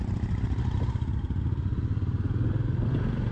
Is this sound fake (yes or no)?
no